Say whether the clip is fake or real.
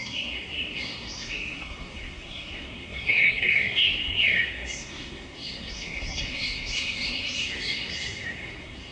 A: fake